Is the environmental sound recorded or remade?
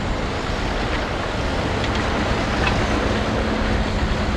recorded